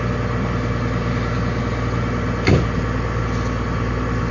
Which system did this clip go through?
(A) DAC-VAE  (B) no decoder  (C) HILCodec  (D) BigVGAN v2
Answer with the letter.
B